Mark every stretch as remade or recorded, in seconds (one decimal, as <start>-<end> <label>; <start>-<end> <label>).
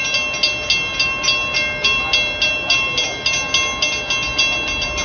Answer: 0.0-5.0 recorded